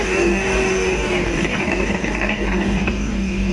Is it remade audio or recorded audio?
remade